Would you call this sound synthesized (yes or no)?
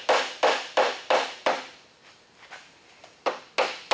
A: no